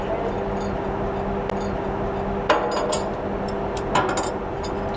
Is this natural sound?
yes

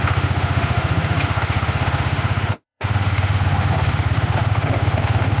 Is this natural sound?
no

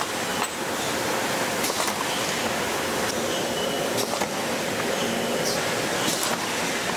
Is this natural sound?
yes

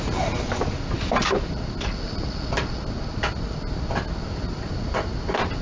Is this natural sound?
yes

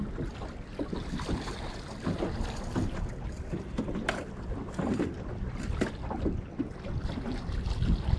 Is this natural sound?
no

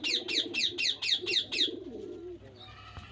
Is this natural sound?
yes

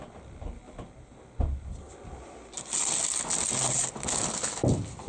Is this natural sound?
yes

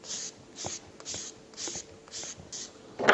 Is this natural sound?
yes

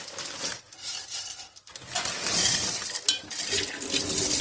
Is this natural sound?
yes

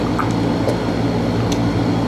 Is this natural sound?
yes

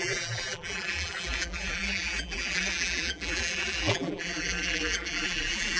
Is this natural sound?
no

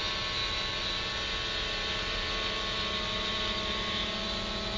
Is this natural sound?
yes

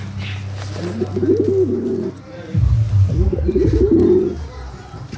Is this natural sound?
yes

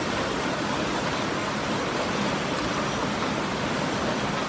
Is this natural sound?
yes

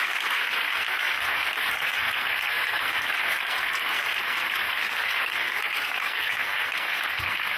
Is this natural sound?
no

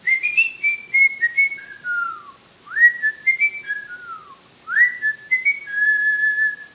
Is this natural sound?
yes